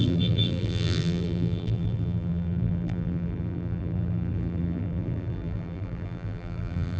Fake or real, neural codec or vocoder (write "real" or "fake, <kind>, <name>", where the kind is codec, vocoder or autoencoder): fake, vocoder, BigVGAN v2